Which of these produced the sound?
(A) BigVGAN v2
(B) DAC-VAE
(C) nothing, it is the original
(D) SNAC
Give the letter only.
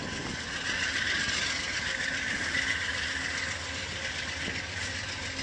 C